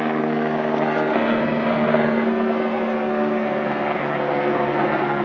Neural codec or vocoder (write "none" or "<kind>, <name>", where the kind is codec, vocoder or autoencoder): codec, SNAC